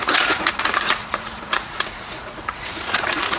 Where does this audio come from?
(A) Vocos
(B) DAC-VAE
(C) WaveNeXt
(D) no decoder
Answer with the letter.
A